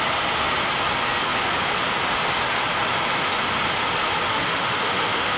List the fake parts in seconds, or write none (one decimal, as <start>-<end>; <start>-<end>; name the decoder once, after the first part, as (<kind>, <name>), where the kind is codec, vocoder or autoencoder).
4.3-5.4 (autoencoder, DAC-VAE)